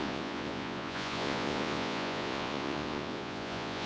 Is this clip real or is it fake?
fake